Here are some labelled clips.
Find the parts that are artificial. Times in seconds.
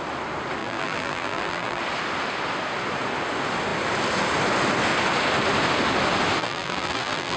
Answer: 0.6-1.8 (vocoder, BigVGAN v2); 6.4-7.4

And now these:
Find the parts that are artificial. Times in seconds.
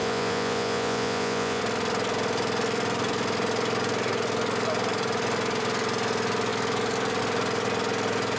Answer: 0.0-1.6 (vocoder, Vocos)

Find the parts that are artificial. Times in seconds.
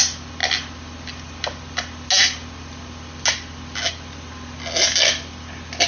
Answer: none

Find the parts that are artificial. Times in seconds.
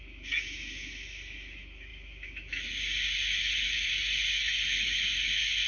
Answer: 0.0-5.7 (autoencoder, DAC-VAE)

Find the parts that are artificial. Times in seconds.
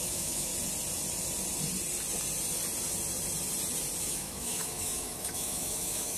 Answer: 0.0-0.5 (autoencoder, DAC-VAE); 4.0-6.2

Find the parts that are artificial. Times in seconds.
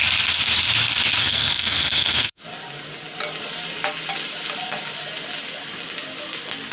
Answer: 1.2-2.4 (codec, SNAC)